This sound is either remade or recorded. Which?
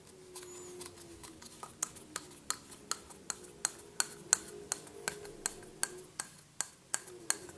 recorded